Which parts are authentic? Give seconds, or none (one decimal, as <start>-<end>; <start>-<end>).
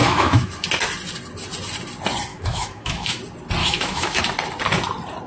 0.5-2.3; 3.2-3.6; 4.2-5.3